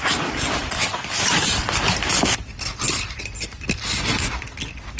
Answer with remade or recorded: recorded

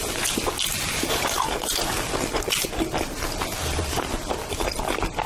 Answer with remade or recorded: recorded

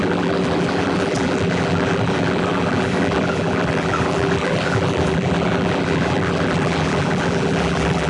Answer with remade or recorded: remade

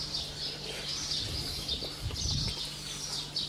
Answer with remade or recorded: recorded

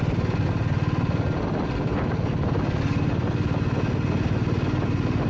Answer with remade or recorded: recorded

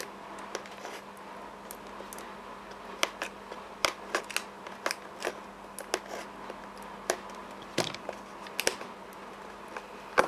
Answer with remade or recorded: recorded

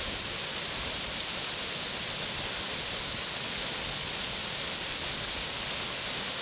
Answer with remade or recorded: recorded